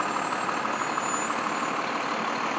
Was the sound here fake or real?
real